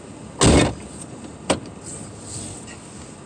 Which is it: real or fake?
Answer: real